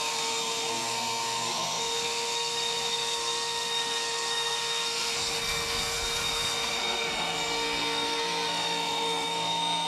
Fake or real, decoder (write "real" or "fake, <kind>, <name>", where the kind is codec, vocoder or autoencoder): fake, codec, SNAC